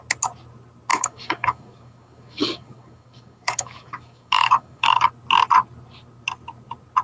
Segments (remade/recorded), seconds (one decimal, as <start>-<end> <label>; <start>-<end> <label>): 0.0-0.9 recorded; 0.9-5.1 remade; 5.1-7.0 recorded